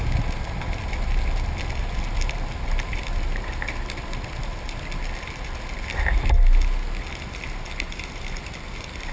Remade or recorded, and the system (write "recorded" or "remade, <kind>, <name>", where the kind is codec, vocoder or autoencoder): recorded